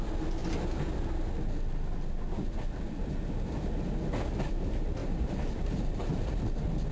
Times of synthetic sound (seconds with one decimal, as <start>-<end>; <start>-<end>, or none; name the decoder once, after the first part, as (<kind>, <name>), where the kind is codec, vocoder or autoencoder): 5.0-6.4 (vocoder, BigVGAN v2)

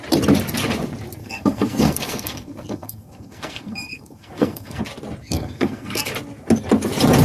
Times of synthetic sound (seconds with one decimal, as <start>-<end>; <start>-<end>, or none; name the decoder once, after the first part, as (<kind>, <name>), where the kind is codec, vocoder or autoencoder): 1.2-4.8 (codec, SNAC); 5.2-6.1

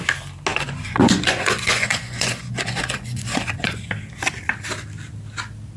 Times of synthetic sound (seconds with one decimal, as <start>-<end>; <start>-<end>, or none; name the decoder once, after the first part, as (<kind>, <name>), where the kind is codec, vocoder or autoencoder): 0.5-3.9 (vocoder, Vocos)

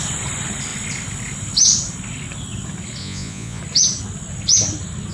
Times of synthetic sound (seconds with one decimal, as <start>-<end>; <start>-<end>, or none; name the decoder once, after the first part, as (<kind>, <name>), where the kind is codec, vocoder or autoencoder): 3.0-3.6 (vocoder, Vocos)

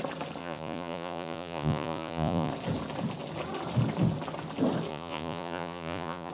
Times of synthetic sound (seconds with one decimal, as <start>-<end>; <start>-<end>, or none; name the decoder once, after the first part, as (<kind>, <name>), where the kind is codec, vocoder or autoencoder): 0.4-2.5 (vocoder, Vocos); 4.9-6.3